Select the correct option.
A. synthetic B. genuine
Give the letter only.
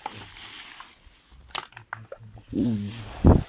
B